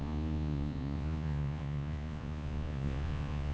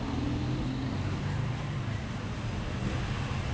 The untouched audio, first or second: second